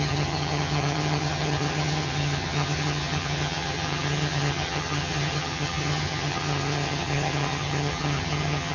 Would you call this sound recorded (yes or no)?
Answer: no